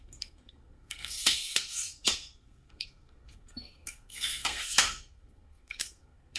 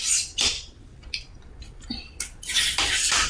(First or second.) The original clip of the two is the second